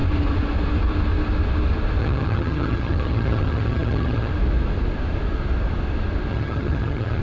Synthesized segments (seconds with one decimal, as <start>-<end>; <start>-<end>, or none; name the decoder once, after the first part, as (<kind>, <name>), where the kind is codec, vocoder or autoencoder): 2.0-4.3 (vocoder, HiFi-GAN); 6.3-7.2